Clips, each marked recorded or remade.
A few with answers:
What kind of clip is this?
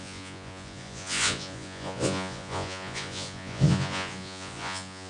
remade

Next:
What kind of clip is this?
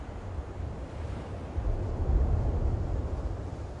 recorded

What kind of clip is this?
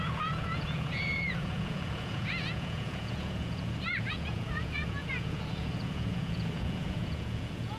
remade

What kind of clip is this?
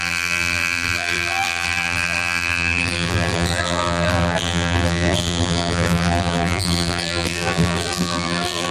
remade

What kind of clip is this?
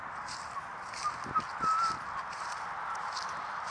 recorded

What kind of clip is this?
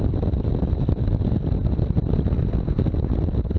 recorded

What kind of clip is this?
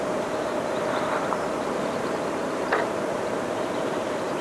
remade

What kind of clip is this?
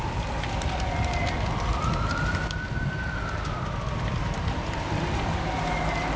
recorded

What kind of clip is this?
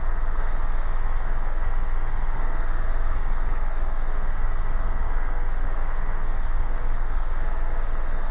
remade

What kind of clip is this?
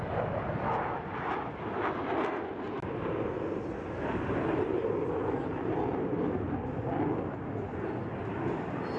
recorded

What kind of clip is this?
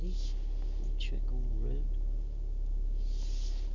recorded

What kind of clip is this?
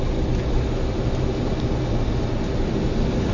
recorded